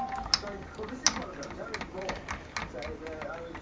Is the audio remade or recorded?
recorded